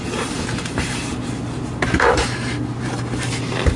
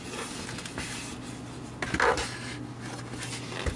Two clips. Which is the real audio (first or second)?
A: second